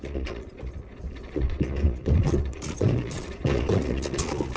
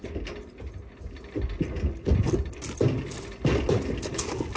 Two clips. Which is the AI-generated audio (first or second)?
first